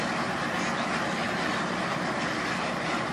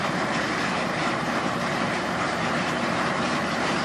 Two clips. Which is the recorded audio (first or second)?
first